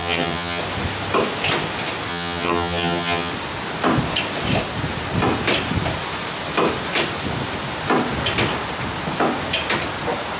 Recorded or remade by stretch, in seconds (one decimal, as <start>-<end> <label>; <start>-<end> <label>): 0.0-0.6 remade; 0.6-2.1 recorded; 2.1-3.3 remade; 3.3-10.4 recorded